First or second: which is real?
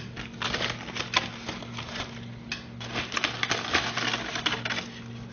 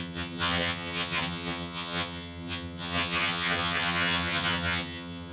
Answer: first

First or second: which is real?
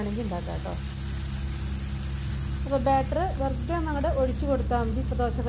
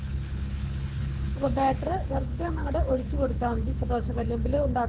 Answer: first